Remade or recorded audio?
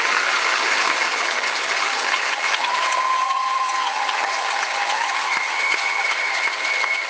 remade